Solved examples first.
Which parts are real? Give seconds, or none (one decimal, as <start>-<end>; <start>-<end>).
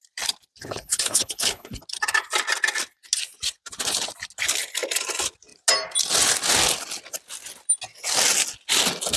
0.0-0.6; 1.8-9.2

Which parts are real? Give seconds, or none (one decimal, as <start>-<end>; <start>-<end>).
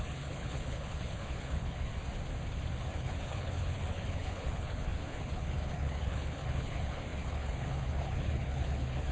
1.9-2.8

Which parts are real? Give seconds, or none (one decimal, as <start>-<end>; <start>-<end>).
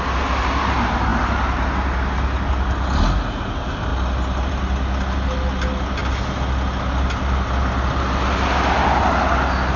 0.0-9.8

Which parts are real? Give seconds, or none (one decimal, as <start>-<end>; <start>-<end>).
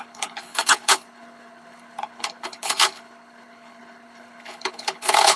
none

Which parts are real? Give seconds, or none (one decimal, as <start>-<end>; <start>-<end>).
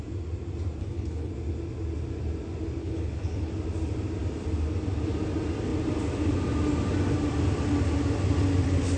0.0-0.8; 1.3-2.8; 3.5-9.0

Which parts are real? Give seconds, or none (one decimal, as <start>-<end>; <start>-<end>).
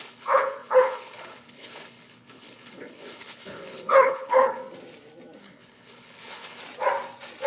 4.6-5.4; 6.6-7.5